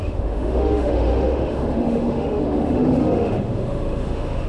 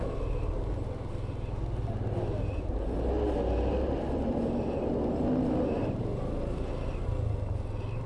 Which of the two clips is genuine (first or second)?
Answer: second